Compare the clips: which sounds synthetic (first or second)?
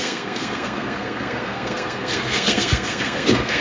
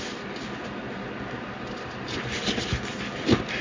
first